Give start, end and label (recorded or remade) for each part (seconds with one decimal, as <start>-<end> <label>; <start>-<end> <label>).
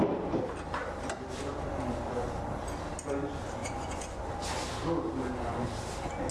0.0-3.6 recorded; 3.6-4.2 remade; 4.2-6.3 recorded